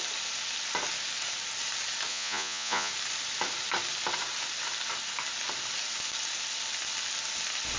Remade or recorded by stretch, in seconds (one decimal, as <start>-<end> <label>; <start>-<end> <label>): 0.0-2.1 recorded; 2.1-2.9 remade; 2.9-7.8 recorded